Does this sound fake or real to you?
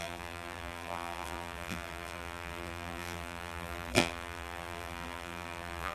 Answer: fake